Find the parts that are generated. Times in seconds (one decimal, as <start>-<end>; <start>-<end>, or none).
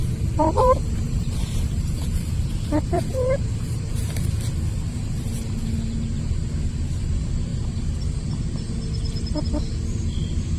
0.0-4.4